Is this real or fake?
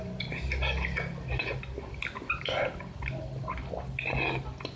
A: real